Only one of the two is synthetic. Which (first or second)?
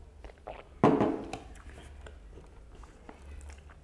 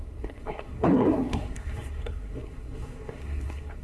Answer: second